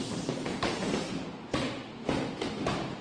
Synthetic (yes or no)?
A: no